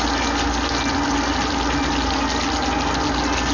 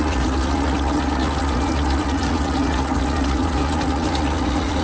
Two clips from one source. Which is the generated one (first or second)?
second